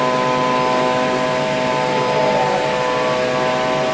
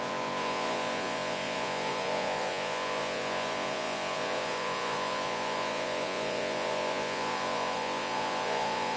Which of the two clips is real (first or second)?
first